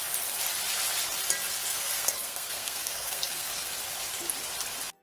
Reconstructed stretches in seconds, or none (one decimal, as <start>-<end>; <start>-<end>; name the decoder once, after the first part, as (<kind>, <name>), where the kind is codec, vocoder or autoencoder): 1.7-3.7 (codec, SNAC)